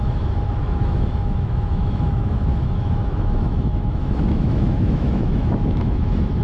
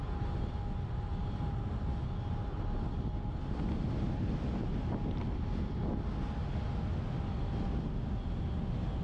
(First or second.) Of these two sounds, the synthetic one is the first